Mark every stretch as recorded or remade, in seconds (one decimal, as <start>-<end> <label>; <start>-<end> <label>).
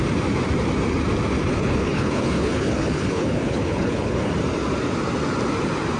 0.0-1.5 recorded; 1.5-4.3 remade; 4.3-6.0 recorded